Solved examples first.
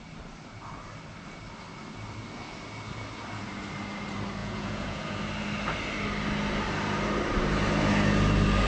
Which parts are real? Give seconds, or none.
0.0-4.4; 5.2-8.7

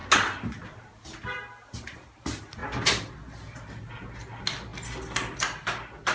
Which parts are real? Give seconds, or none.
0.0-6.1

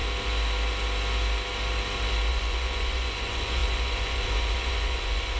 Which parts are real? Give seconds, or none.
0.0-2.3

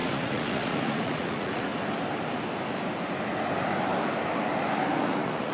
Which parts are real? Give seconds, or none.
1.7-5.0